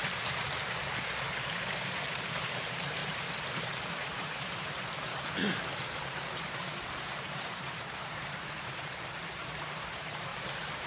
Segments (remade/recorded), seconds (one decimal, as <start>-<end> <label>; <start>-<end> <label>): 0.0-10.9 remade